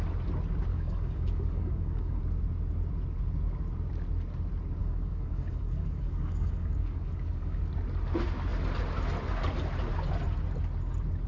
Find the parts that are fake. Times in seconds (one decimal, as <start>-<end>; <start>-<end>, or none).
0.7-2.2; 4.8-7.6